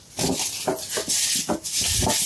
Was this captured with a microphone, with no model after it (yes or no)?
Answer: yes